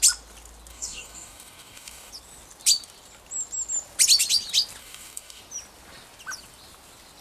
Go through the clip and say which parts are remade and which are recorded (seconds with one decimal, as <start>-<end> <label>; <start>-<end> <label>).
0.0-0.7 recorded; 0.7-2.1 remade; 2.1-4.8 recorded; 4.8-5.4 remade; 5.4-7.2 recorded